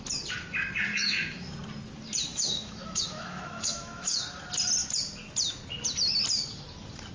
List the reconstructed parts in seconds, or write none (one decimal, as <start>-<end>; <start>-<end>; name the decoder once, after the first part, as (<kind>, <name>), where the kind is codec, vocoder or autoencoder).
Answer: 0.9-1.5 (autoencoder, DAC-VAE); 2.3-4.2

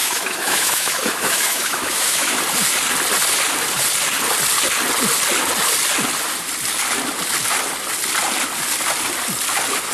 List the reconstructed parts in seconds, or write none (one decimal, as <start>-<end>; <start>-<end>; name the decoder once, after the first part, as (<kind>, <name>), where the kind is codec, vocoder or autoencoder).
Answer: 0.0-2.4 (autoencoder, DAC-VAE)